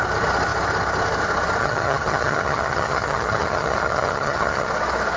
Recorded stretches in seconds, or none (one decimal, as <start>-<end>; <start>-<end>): 0.0-1.6; 4.7-5.2